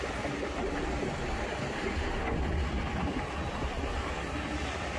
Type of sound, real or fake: real